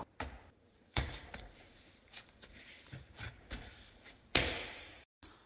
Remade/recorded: remade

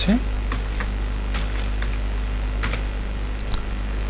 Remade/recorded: recorded